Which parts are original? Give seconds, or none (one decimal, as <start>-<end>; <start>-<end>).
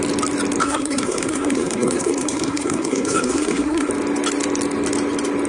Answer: 0.0-0.6; 3.9-5.5